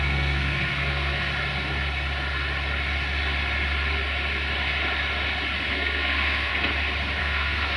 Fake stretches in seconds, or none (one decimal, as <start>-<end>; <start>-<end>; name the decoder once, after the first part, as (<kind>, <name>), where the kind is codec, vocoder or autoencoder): 0.0-1.3 (codec, SNAC); 5.7-6.5; 7.2-7.8